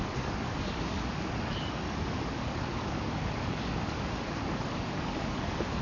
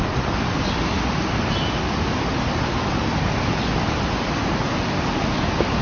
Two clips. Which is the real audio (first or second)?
second